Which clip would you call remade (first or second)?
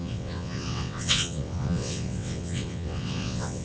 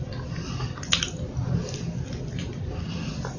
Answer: first